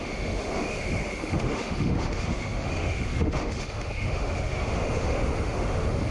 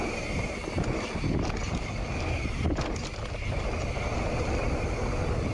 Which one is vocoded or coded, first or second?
first